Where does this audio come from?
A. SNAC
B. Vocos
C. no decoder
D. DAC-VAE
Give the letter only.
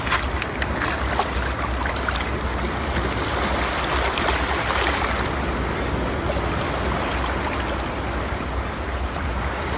C